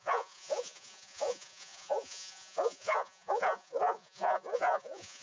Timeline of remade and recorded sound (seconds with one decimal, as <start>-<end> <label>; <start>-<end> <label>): 0.0-5.2 remade